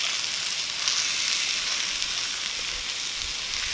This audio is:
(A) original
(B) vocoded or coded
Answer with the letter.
A